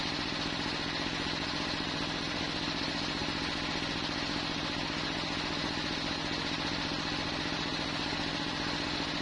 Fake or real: real